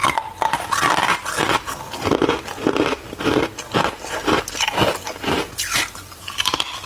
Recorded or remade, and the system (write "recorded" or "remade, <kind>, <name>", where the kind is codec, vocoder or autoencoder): recorded